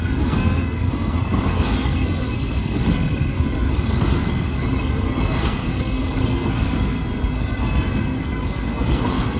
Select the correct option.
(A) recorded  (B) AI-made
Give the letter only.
B